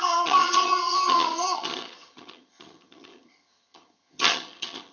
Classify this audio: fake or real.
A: fake